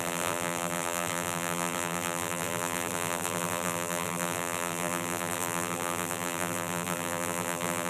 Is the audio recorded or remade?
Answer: remade